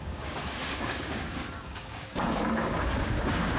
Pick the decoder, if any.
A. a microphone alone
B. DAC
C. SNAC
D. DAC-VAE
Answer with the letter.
B